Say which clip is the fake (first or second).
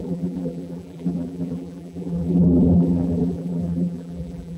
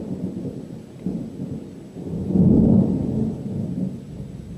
first